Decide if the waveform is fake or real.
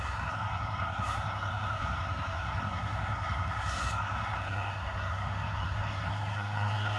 fake